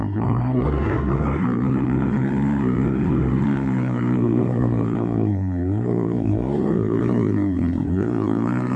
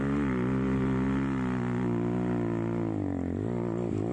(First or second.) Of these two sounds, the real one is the second